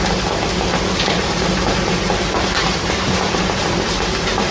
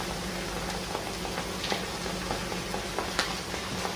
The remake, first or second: first